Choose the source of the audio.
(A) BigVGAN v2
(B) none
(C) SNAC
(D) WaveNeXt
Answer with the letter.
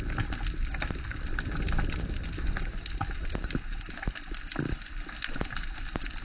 B